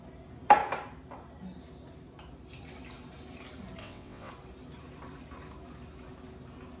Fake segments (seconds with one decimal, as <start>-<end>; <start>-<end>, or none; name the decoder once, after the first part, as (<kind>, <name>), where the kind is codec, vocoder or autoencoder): 3.8-4.3 (vocoder, WaveNeXt)